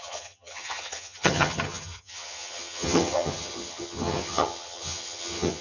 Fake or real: fake